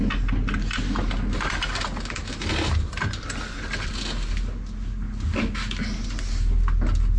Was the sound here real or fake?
real